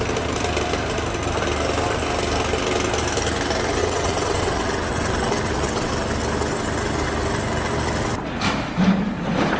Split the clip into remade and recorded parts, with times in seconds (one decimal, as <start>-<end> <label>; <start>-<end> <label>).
0.0-3.8 recorded; 3.8-5.9 remade; 5.9-9.6 recorded